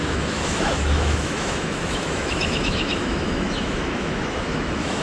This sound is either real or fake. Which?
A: fake